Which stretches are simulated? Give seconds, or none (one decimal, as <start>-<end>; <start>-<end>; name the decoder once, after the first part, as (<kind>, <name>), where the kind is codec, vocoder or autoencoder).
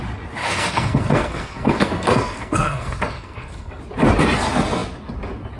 0.4-3.8 (codec, SNAC)